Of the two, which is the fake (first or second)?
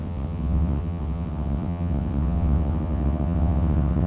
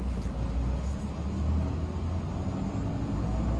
first